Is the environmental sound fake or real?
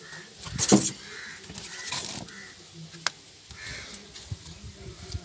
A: real